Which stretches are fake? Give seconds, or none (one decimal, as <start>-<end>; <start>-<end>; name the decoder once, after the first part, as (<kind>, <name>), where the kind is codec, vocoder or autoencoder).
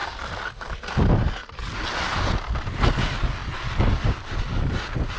none